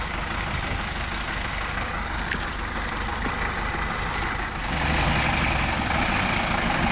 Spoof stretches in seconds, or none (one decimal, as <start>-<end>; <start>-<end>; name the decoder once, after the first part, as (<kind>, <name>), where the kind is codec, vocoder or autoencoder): none